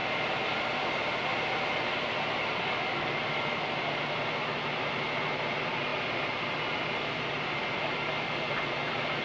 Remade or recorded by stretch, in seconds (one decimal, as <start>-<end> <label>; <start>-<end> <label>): 0.0-9.2 recorded